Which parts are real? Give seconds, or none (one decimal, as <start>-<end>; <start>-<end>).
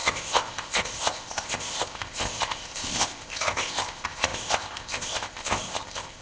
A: none